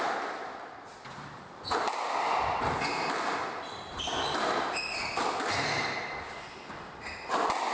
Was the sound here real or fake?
real